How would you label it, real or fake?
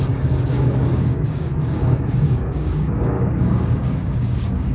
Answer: fake